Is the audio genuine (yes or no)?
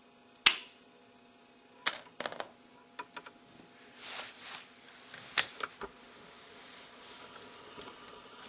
yes